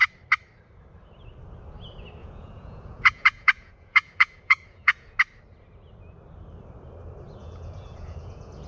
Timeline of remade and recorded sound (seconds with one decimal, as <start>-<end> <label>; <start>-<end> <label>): 0.0-2.2 recorded; 2.2-5.2 remade; 5.2-7.4 recorded; 7.4-8.7 remade